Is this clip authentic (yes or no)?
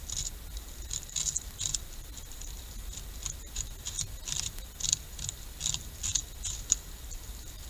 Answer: yes